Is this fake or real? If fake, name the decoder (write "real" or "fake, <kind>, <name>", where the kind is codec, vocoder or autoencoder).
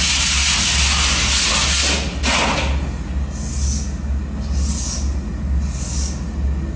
real